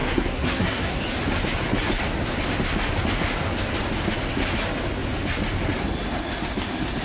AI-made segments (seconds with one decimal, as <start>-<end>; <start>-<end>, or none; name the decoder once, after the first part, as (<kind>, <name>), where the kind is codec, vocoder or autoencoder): 0.0-1.0 (codec, SNAC)